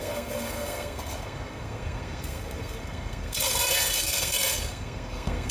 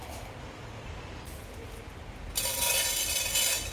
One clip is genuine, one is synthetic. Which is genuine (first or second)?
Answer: second